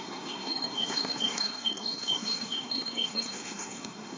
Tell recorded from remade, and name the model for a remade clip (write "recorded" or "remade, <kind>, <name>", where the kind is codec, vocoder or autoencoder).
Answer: remade, codec, SNAC